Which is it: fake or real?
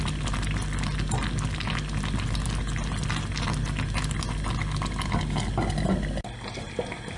real